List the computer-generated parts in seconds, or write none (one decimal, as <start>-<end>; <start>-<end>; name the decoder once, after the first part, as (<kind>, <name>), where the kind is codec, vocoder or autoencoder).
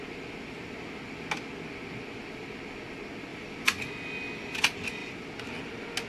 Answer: 3.3-3.9 (vocoder, BigVGAN v2); 5.0-5.6